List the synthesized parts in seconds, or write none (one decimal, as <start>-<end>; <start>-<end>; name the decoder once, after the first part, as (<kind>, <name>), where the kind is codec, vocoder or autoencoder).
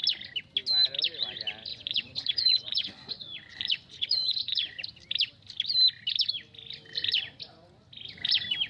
1.7-4.8 (vocoder, Vocos)